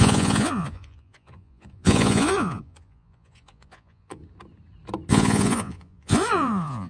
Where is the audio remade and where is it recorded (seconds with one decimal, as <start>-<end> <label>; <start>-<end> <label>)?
0.0-4.2 remade; 4.2-5.1 recorded; 5.1-6.9 remade